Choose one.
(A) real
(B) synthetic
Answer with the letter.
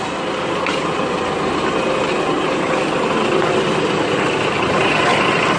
A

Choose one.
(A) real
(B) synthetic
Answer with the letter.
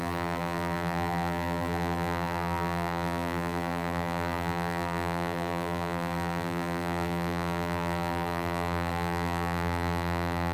B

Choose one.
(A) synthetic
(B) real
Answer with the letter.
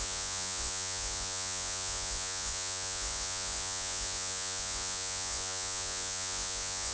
A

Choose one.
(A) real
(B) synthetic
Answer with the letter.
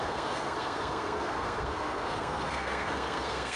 B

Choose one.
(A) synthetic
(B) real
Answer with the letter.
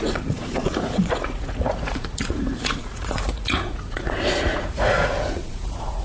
A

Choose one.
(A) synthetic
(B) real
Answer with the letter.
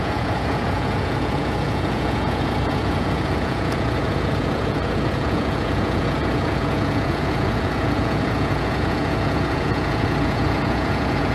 A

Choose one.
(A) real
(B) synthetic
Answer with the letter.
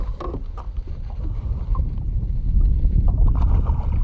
A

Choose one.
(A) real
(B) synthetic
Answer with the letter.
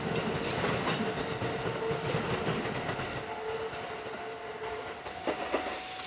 A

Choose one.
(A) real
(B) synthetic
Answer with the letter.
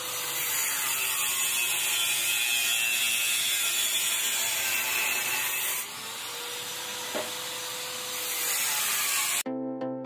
A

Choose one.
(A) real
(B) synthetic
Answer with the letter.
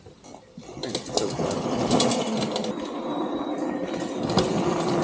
A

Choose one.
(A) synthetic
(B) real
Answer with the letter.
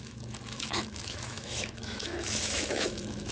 A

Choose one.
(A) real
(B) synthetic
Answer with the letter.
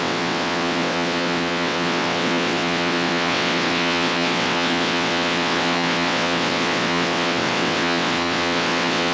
B